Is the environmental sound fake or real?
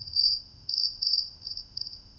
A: fake